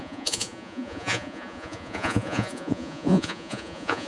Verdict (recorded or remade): remade